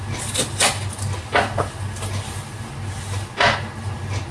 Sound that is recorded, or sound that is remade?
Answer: recorded